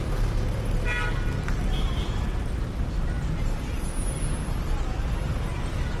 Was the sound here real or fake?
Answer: real